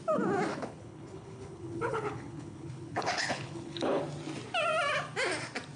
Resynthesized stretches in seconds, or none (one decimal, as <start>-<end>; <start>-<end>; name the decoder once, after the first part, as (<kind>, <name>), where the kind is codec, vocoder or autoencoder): 0.5-4.0 (codec, HILCodec)